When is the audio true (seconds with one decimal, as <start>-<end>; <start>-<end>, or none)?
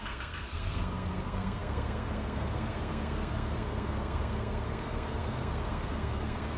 none